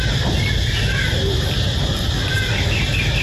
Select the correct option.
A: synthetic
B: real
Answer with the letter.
B